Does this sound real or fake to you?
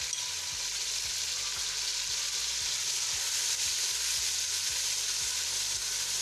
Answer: real